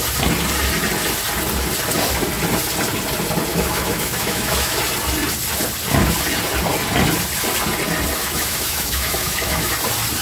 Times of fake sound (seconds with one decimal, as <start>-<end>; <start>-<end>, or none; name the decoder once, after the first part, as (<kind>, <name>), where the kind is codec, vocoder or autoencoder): 3.5-4.8 (autoencoder, DAC-VAE); 8.2-9.7